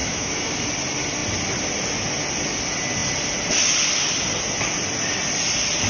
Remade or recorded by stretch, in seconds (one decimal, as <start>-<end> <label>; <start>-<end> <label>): 0.0-0.6 remade; 0.6-5.9 recorded